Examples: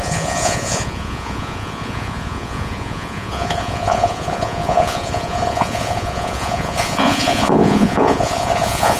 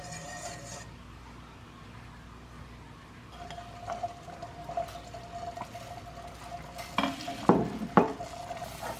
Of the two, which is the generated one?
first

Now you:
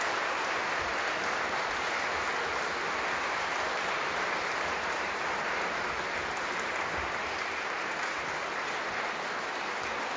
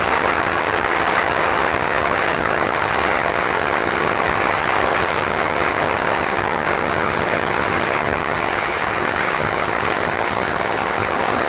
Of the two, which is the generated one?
second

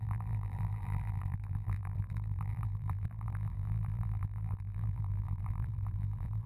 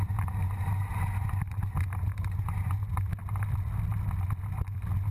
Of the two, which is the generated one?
first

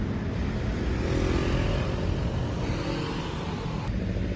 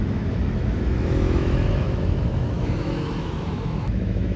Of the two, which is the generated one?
second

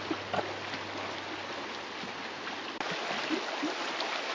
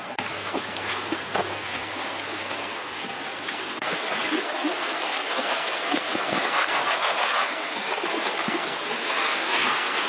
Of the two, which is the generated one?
second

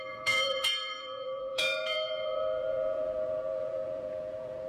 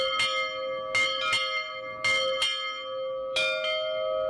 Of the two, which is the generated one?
first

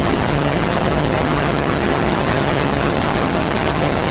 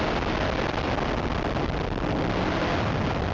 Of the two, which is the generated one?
first